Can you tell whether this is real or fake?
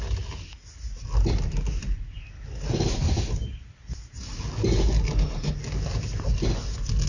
real